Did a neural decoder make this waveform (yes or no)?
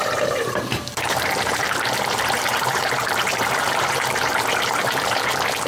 yes